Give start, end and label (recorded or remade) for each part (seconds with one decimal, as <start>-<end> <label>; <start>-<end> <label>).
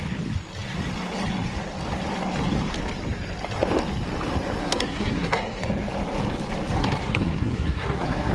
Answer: 0.0-4.6 recorded; 4.6-5.6 remade; 5.6-6.8 recorded; 6.8-8.3 remade